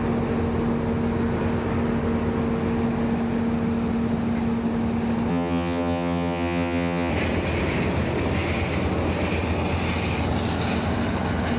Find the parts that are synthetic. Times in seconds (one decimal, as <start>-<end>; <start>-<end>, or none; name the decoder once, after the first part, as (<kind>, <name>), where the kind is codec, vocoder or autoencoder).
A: 5.3-7.1 (vocoder, HiFi-GAN)